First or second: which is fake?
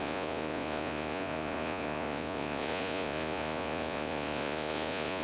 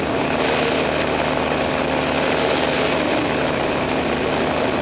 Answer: first